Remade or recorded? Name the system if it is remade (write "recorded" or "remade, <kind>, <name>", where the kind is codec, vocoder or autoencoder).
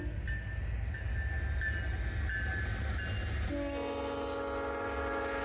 recorded